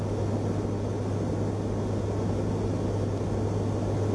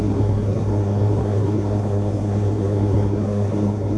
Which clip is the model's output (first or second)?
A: second